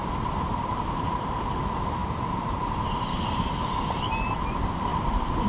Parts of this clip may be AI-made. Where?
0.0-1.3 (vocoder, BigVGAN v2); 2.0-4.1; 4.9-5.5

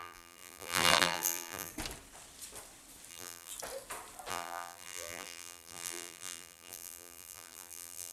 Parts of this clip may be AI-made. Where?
0.0-1.7 (vocoder, BigVGAN v2); 3.1-3.5; 4.3-8.1

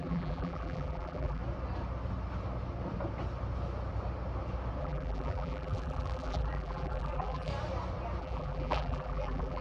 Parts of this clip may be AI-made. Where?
0.0-1.4 (vocoder, BigVGAN v2); 4.8-7.5; 8.2-9.6

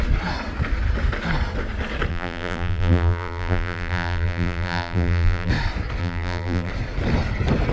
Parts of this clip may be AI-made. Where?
2.1-5.5 (vocoder, BigVGAN v2); 6.0-6.7

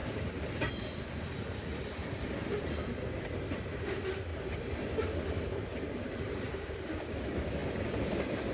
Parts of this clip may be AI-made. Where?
0.0-0.7 (vocoder, BigVGAN v2); 4.3-7.1

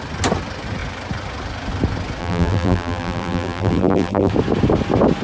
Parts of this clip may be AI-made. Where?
2.2-4.3 (vocoder, BigVGAN v2)

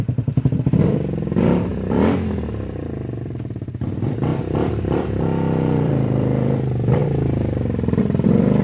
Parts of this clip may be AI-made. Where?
0.0-1.7 (vocoder, BigVGAN v2); 3.2-7.0; 8.0-8.6